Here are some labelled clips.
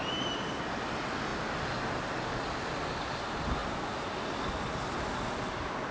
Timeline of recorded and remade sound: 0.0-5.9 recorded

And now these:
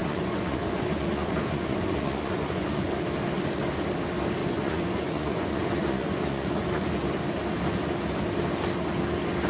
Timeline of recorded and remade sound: 0.0-2.9 remade; 2.9-4.4 recorded; 4.4-6.9 remade; 6.9-9.5 recorded